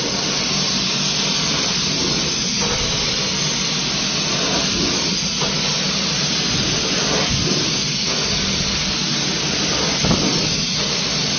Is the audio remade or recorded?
recorded